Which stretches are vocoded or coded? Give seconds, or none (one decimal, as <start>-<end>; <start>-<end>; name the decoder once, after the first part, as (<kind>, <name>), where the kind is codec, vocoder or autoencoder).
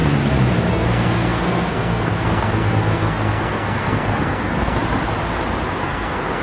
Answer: 0.7-4.8 (codec, SNAC); 5.8-6.4